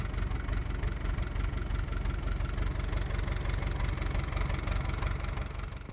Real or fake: real